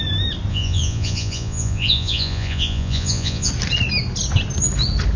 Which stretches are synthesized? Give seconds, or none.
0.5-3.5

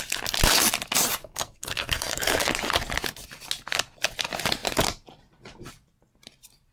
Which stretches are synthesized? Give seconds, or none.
1.2-2.4

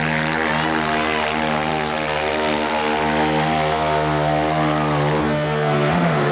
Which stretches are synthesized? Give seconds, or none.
5.2-6.3

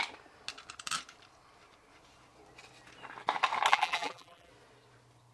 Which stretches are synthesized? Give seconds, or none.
3.7-4.5

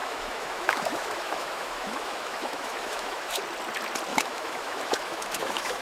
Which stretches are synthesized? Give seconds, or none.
0.0-3.4; 4.1-5.8

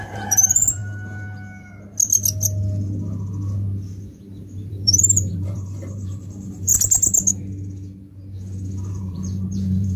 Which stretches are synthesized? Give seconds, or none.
0.0-0.8; 4.7-6.7; 8.9-10.0

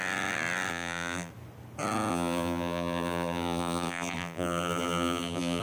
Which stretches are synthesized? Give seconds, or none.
0.7-1.3; 2.1-5.6

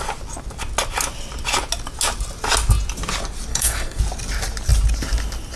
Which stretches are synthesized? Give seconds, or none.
3.5-4.0